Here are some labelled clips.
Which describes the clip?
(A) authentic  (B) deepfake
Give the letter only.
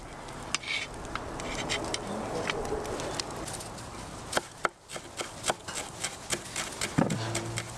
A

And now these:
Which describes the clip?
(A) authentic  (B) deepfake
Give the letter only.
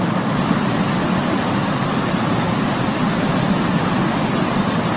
A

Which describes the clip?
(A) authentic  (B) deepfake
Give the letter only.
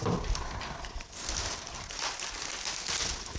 A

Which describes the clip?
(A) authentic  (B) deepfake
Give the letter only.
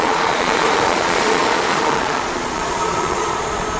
B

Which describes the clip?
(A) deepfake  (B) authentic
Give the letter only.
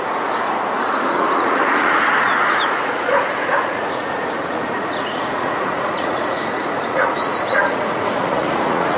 A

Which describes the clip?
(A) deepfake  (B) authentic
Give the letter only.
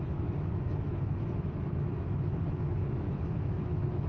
A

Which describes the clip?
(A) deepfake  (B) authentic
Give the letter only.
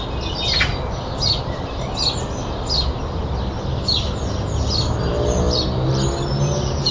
B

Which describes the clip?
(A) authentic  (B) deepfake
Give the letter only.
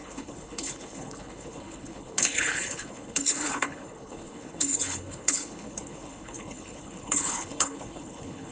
B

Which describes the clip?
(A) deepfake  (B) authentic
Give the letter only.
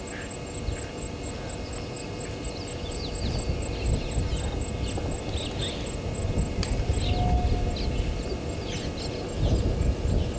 B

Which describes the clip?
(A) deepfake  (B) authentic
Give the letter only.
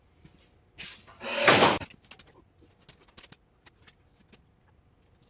B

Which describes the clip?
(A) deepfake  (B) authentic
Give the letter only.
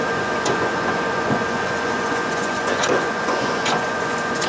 A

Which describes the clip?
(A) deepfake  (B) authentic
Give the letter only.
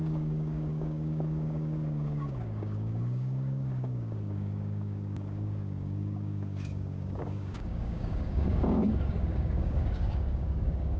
A